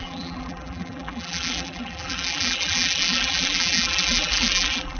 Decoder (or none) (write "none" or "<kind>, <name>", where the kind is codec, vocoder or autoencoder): vocoder, BigVGAN v2